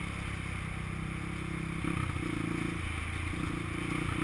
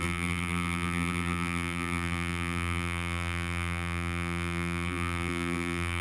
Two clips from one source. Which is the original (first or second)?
first